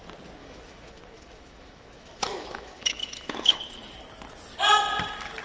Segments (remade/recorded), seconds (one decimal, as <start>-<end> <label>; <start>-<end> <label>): 0.0-0.4 recorded; 0.4-3.6 remade; 3.6-5.4 recorded